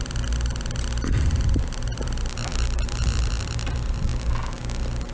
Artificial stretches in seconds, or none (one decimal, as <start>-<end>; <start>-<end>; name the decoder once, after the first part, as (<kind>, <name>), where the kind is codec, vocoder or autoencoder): 0.0-2.5 (vocoder, BigVGAN v2); 3.4-4.1